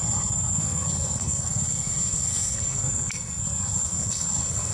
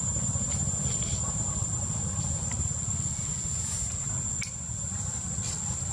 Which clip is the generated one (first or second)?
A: first